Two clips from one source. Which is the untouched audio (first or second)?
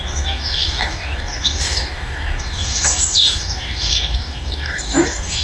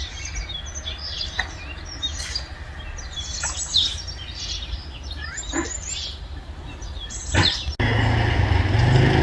second